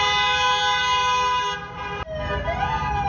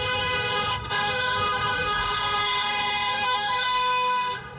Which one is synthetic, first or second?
second